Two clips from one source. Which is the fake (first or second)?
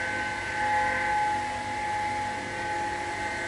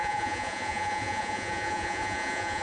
second